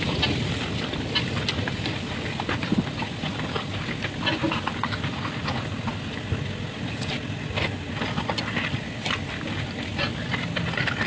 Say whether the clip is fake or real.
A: real